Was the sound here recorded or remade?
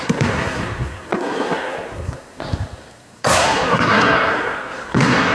remade